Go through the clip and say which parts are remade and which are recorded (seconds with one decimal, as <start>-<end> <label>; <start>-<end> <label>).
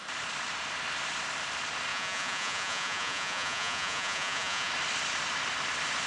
0.0-1.9 recorded; 1.9-4.7 remade; 4.7-6.1 recorded